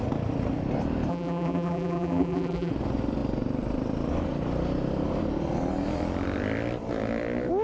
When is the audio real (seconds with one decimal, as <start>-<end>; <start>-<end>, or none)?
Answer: 0.0-1.1; 2.7-7.6